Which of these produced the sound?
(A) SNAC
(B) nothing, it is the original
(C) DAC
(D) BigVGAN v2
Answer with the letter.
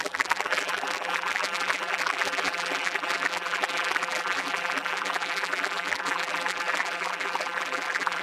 D